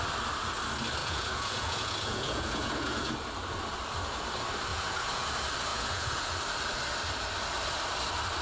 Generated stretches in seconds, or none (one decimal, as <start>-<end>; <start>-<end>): 1.0-3.1; 4.7-5.3; 5.7-6.3